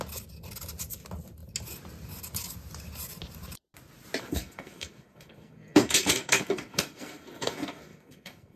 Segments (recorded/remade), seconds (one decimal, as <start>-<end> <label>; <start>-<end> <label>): 0.0-4.2 recorded; 4.2-8.6 remade